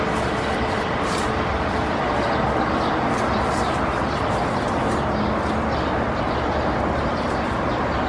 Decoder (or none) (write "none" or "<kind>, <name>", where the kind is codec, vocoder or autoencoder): none